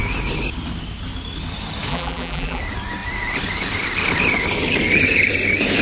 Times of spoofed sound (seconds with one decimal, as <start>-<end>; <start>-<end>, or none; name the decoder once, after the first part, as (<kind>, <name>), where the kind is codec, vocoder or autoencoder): 1.9-2.6 (vocoder, BigVGAN v2)